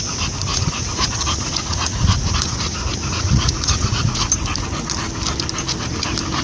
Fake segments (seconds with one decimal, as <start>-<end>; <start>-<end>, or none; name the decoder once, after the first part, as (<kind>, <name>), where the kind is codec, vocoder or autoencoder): 0.5-4.3 (vocoder, Vocos)

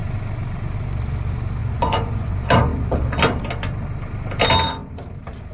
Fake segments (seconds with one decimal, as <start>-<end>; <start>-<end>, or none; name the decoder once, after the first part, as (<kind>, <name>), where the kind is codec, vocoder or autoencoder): 1.6-2.3 (vocoder, Vocos)

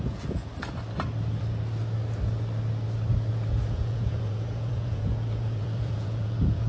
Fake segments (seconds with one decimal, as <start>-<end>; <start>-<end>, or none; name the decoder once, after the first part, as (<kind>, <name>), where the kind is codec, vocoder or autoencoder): 0.0-0.5 (vocoder, Vocos); 3.3-6.7

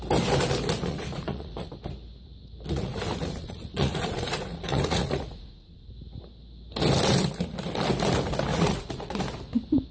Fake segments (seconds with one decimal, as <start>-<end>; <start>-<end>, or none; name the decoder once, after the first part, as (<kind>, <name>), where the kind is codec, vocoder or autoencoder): 0.9-1.7 (vocoder, Vocos); 2.7-5.9; 8.5-9.2

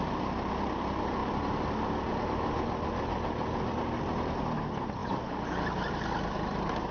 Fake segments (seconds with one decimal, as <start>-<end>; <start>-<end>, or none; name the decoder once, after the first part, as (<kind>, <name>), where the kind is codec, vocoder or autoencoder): none

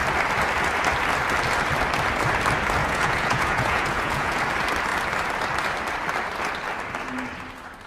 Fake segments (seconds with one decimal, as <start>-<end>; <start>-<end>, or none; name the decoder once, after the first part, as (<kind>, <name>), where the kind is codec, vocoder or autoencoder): 2.8-4.4 (vocoder, Vocos)